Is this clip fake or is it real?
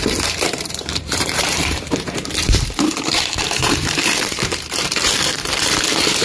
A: fake